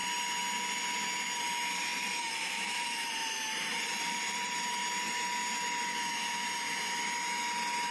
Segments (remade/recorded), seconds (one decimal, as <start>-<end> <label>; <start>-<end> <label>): 0.0-1.9 recorded; 1.9-4.8 remade; 4.8-7.9 recorded

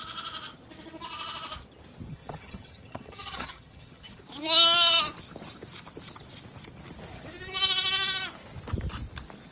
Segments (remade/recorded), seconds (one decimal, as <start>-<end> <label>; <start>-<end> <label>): 0.0-2.1 recorded; 2.1-4.2 remade; 4.2-9.5 recorded

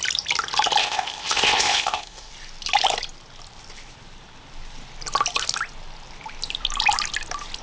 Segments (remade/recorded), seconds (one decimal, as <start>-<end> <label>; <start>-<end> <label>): 0.0-0.8 recorded; 0.8-2.3 remade; 2.3-7.6 recorded

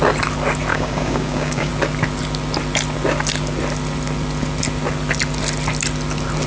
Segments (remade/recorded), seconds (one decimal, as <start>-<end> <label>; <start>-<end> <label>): 0.0-0.7 recorded; 0.7-1.7 remade; 1.7-6.5 recorded

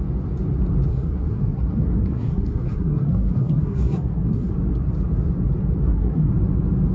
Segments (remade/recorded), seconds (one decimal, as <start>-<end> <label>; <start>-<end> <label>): 0.0-0.9 recorded; 0.9-4.5 remade; 4.5-5.8 recorded; 5.8-6.3 remade; 6.3-6.9 recorded

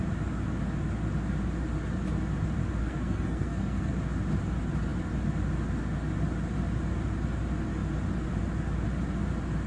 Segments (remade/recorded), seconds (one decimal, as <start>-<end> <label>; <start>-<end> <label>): 0.0-2.8 recorded; 2.8-3.9 remade; 3.9-9.7 recorded

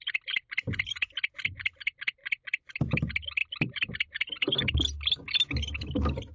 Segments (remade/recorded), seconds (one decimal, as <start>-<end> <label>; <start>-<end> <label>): 0.0-2.2 recorded; 2.2-3.0 remade; 3.0-3.4 recorded; 3.4-3.9 remade; 3.9-6.3 recorded

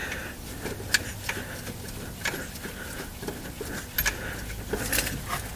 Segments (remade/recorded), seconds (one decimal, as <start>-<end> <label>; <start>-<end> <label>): 0.0-5.6 recorded